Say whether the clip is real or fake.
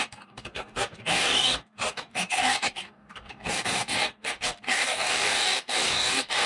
fake